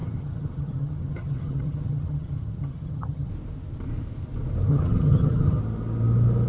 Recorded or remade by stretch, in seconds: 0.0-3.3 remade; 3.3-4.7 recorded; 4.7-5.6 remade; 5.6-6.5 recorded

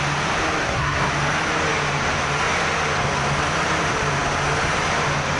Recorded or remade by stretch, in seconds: 0.0-0.6 recorded; 0.6-1.1 remade; 1.1-5.4 recorded

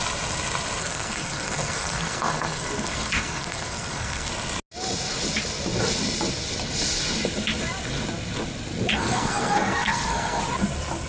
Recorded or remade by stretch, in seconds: 0.0-0.8 recorded; 0.8-4.3 remade; 4.3-8.9 recorded; 8.9-10.4 remade; 10.4-11.1 recorded

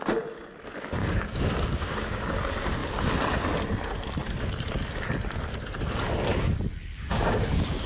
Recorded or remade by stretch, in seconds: 0.0-1.0 recorded; 1.0-2.4 remade; 2.4-6.9 recorded; 6.9-7.9 remade

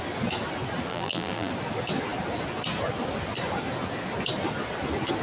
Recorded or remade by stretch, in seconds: 0.0-0.9 recorded; 0.9-1.5 remade; 1.5-5.2 recorded